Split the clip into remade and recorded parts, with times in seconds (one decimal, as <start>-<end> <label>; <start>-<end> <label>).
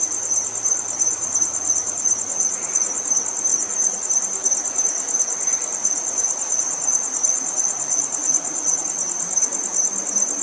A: 0.0-1.1 recorded; 1.1-3.0 remade; 3.0-3.5 recorded; 3.5-4.1 remade; 4.1-5.8 recorded; 5.8-8.8 remade; 8.8-10.4 recorded